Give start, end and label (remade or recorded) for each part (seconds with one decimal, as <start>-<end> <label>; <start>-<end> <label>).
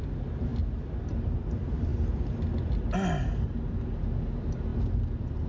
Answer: 0.0-5.5 recorded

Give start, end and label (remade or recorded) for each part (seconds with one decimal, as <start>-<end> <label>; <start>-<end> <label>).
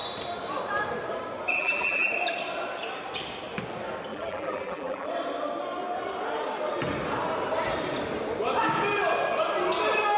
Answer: 0.0-1.6 recorded; 1.6-2.1 remade; 2.1-4.1 recorded; 4.1-5.1 remade; 5.1-10.2 recorded